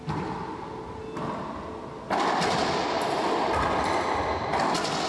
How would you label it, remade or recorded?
recorded